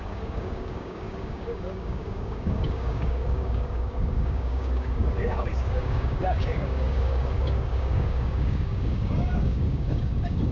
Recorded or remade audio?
remade